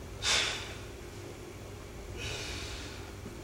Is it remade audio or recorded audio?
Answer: recorded